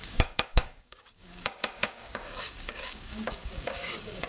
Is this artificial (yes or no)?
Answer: yes